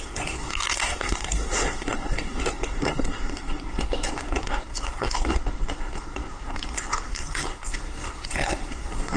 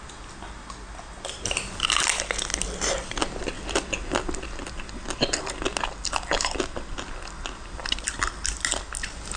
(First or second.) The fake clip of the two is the first